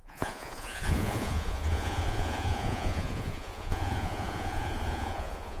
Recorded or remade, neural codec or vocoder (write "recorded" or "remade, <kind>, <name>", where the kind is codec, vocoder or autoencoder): remade, vocoder, Vocos